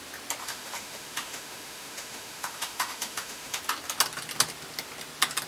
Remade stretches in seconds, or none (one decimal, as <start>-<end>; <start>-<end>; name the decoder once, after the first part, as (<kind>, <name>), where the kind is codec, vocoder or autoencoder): 0.4-3.6 (autoencoder, DAC-VAE)